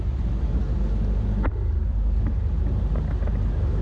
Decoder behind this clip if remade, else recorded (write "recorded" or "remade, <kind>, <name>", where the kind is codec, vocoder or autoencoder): recorded